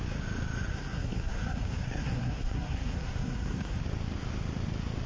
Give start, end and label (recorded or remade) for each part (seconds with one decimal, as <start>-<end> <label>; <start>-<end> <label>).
0.0-0.7 recorded; 0.7-3.8 remade; 3.8-5.1 recorded